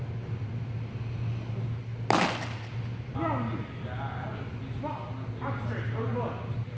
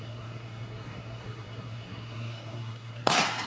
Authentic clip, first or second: first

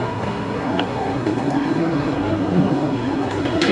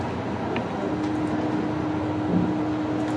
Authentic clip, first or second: second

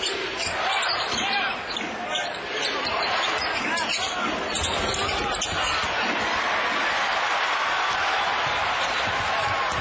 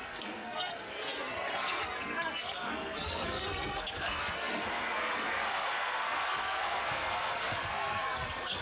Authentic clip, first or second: first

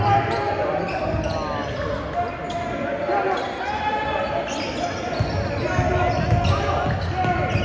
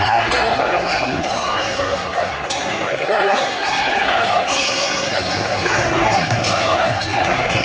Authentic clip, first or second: first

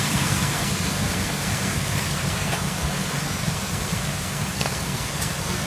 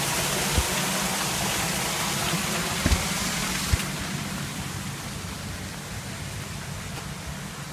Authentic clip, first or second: second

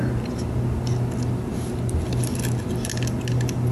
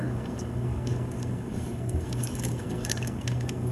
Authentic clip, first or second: first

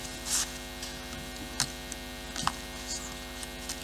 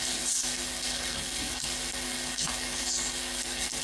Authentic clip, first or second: first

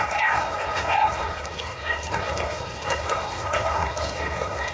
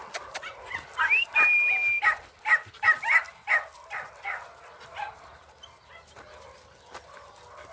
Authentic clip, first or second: second